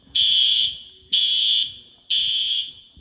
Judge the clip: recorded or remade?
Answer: remade